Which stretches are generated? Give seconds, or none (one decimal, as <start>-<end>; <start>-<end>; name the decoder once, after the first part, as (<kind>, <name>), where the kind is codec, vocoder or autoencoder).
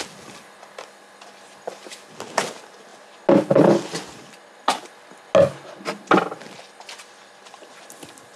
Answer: none